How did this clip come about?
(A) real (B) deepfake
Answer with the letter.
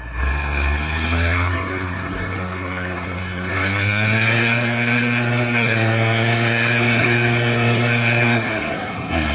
B